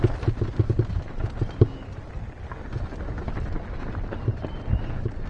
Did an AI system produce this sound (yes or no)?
no